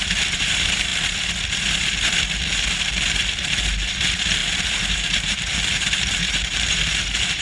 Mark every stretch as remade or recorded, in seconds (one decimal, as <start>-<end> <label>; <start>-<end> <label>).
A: 0.0-0.9 remade; 0.9-2.7 recorded; 2.7-7.4 remade